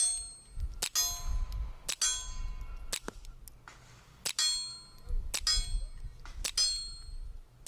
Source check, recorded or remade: recorded